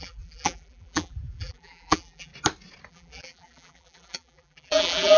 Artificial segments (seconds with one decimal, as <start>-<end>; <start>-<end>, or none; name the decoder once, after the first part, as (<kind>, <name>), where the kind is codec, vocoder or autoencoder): 0.0-2.3 (vocoder, BigVGAN v2); 2.9-5.2

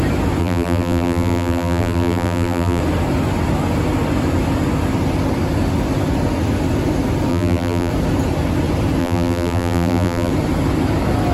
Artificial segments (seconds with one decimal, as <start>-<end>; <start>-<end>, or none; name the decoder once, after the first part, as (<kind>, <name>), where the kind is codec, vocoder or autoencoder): 0.4-2.8 (vocoder, BigVGAN v2); 7.3-7.9; 9.0-10.3

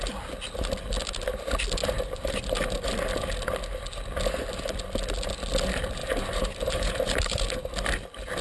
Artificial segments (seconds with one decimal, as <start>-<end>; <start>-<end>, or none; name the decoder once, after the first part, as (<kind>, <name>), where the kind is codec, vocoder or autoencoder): 1.8-2.4 (vocoder, BigVGAN v2); 6.0-7.4

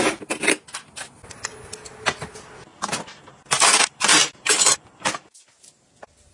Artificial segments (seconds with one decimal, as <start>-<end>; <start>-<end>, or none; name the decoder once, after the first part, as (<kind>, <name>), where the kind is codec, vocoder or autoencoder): 2.7-3.2 (vocoder, BigVGAN v2); 4.2-6.3

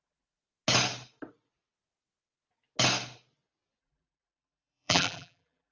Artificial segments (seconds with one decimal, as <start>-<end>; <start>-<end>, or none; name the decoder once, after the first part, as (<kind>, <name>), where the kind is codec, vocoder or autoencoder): 0.0-0.4 (vocoder, BigVGAN v2); 3.8-5.7

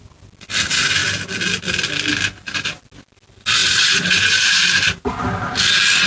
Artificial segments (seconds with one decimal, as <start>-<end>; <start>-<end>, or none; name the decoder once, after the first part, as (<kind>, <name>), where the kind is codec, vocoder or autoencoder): 3.6-5.1 (vocoder, BigVGAN v2)

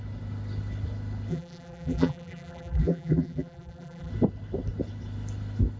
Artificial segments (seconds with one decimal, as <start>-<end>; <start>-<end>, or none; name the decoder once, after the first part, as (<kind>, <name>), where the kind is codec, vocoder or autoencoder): 1.3-4.1 (vocoder, BigVGAN v2)